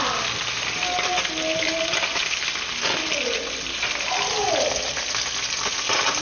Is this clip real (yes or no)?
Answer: yes